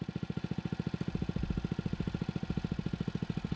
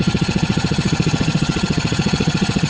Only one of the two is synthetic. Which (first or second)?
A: second